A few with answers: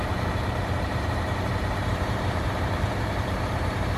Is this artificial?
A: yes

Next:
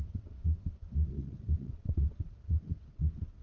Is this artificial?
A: yes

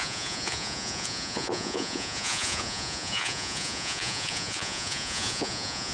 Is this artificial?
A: yes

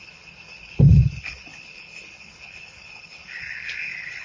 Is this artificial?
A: yes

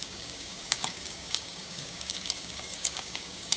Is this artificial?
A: yes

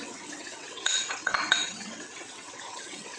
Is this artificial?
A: yes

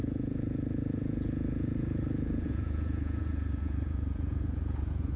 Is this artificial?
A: yes